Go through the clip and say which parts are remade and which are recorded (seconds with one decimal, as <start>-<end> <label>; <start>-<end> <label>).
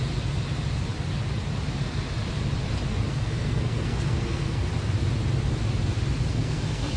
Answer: 0.0-3.1 recorded; 3.1-4.7 remade; 4.7-6.3 recorded; 6.3-7.0 remade